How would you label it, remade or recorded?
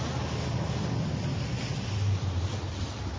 recorded